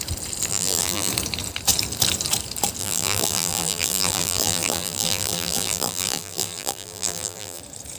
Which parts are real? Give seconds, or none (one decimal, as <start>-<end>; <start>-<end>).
0.0-0.5; 1.1-2.8; 7.6-8.0